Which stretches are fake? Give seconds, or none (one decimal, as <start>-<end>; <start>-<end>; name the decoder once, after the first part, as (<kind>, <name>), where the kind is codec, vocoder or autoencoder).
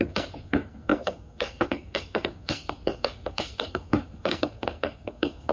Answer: 0.0-5.5 (codec, SNAC)